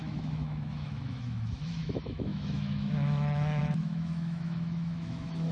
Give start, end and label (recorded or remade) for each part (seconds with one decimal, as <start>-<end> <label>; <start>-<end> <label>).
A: 0.0-5.5 remade